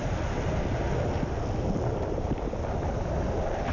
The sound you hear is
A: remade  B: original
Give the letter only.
B